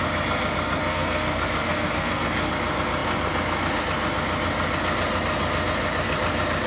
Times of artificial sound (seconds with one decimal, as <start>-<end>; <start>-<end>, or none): 0.8-2.5